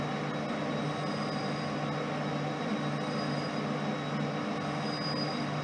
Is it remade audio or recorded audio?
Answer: recorded